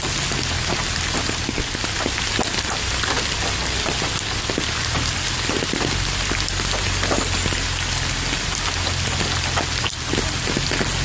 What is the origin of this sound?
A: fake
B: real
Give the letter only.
B